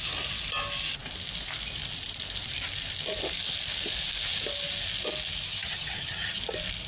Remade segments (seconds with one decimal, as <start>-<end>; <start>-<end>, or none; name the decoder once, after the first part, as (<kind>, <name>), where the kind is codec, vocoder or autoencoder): 5.5-6.4 (vocoder, HiFi-GAN)